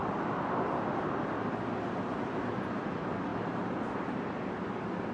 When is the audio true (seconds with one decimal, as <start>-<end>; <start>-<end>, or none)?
0.0-5.1